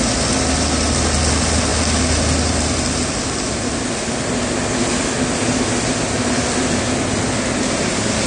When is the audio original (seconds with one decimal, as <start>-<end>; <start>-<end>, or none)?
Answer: 0.0-8.3